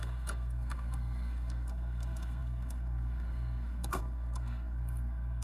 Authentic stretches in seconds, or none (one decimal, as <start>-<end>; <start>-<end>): none